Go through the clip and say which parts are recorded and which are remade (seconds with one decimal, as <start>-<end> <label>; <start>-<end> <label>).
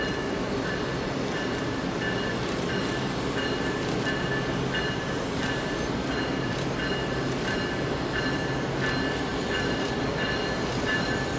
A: 0.0-11.4 recorded